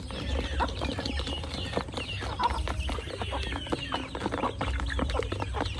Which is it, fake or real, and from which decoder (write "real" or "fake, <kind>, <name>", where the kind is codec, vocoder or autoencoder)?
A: real